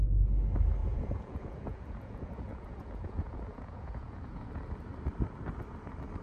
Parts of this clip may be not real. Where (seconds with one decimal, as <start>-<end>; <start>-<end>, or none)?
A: 0.8-4.5